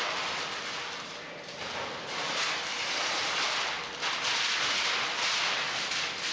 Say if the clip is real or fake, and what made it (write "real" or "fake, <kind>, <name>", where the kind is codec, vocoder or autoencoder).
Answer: real